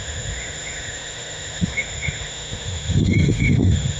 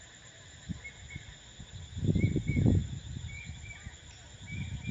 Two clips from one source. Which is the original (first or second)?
second